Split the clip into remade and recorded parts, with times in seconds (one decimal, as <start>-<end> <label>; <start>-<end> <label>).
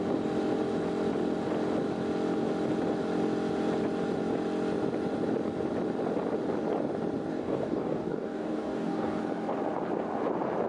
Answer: 0.0-7.3 recorded; 7.3-9.2 remade; 9.2-10.7 recorded